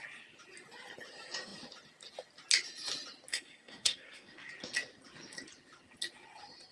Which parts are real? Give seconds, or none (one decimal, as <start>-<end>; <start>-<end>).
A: 0.0-3.3; 4.5-6.7